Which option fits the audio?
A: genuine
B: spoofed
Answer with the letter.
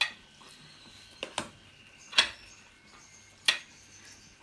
A